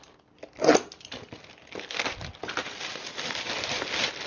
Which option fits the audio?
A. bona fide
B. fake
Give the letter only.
A